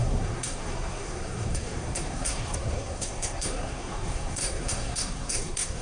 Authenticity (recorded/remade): remade